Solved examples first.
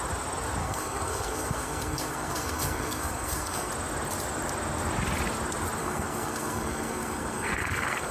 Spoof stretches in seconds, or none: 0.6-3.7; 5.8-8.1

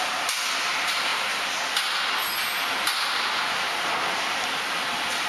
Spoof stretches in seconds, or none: none